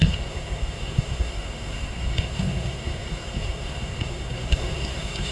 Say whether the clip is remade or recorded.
remade